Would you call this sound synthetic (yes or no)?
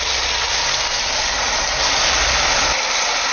no